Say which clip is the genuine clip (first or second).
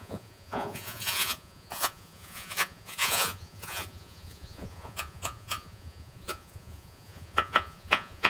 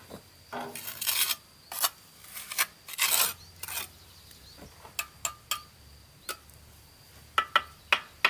second